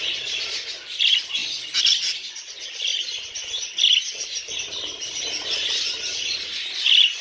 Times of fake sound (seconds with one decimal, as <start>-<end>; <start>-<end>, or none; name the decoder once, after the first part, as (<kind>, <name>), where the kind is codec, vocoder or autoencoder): none